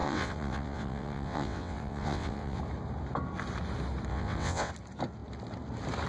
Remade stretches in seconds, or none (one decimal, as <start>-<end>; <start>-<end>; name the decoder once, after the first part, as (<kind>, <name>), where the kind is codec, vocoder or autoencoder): 0.0-2.6 (vocoder, WaveNeXt); 4.1-4.7